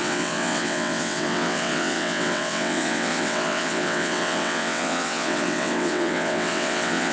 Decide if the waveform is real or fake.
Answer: fake